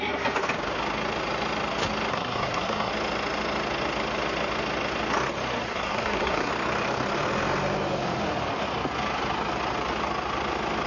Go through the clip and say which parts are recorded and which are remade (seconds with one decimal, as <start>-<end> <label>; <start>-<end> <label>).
0.0-2.1 recorded; 2.1-2.9 remade; 2.9-5.6 recorded; 5.6-6.5 remade; 6.5-10.9 recorded